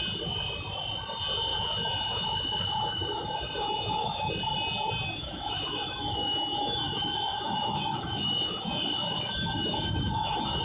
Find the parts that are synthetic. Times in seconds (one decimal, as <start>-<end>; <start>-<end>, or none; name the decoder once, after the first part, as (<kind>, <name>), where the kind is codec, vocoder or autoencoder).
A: 1.5-4.3 (autoencoder, DAC-VAE); 5.2-10.6